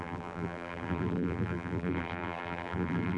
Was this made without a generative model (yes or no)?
no